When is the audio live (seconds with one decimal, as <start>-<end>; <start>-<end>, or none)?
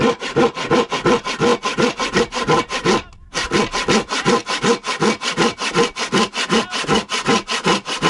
0.0-8.1